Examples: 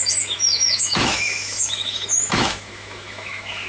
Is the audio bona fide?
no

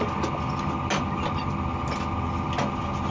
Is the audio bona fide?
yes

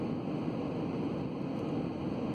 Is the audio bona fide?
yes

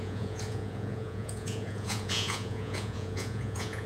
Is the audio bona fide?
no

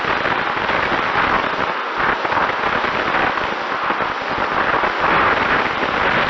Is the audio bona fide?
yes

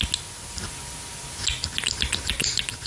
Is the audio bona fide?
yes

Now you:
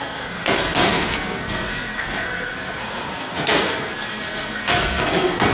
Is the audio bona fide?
no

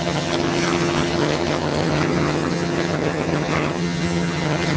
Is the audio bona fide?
no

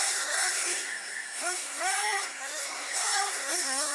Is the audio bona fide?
no